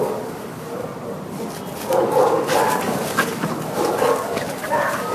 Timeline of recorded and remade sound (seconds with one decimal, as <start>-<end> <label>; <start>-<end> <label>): 0.0-0.9 remade; 0.9-2.0 recorded; 2.0-5.1 remade